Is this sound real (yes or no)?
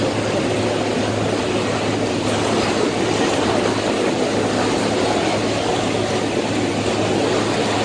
yes